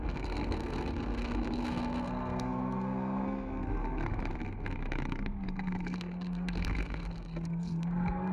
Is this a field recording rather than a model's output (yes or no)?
no